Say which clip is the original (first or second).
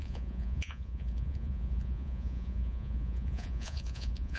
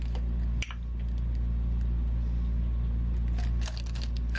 second